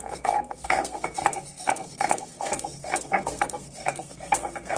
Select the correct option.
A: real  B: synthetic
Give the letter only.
B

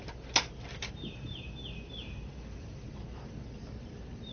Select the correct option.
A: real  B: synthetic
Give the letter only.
A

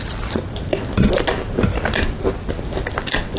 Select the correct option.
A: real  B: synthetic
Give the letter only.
A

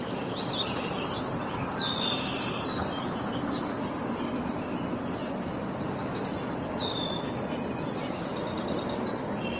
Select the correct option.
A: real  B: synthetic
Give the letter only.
A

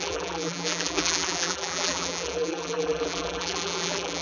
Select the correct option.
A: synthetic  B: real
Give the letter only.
A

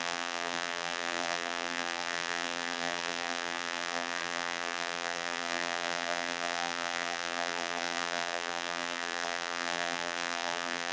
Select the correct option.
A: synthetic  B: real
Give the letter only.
A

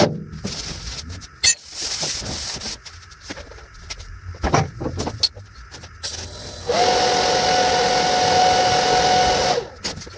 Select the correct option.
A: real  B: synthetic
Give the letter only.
A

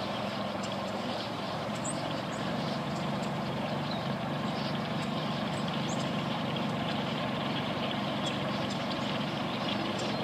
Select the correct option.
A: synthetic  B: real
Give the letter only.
A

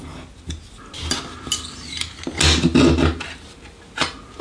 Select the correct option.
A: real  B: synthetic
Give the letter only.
A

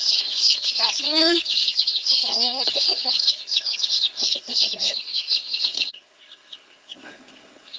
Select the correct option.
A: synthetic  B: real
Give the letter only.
A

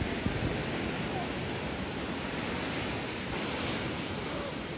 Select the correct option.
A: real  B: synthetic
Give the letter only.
A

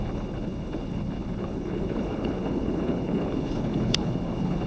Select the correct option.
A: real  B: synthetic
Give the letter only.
B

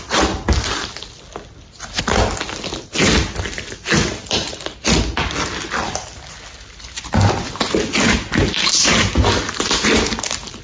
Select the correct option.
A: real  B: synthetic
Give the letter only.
A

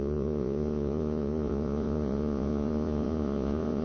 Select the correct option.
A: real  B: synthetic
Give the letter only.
B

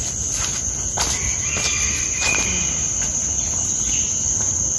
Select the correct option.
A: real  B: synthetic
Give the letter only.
A